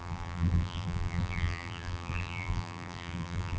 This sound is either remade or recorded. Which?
remade